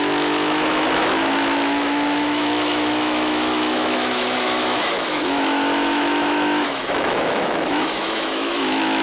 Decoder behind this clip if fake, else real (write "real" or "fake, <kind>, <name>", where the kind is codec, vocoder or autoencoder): fake, autoencoder, DAC-VAE